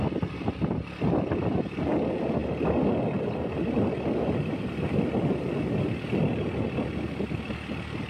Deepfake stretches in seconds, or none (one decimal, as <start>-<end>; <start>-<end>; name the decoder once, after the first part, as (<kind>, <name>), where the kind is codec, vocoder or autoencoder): none